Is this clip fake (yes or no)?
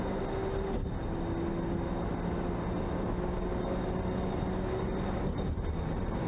no